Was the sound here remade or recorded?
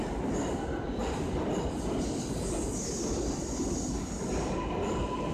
recorded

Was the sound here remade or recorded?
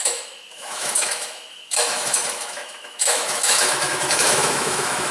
remade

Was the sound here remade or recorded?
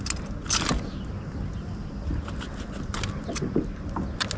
recorded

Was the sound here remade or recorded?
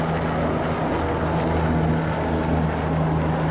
recorded